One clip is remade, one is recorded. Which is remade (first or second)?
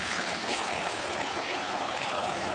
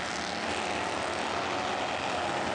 first